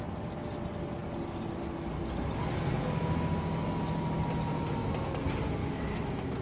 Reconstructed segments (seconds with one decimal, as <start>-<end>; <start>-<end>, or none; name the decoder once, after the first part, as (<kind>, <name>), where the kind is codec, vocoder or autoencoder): 5.6-6.4 (autoencoder, DAC-VAE)